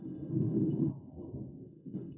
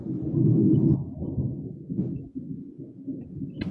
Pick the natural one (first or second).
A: second